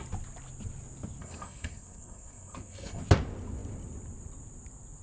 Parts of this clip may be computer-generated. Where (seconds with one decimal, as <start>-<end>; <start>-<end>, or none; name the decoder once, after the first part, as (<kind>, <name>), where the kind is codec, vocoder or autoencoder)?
1.2-3.0 (codec, SNAC)